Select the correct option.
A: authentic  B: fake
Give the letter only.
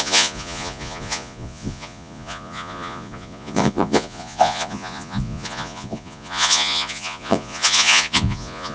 B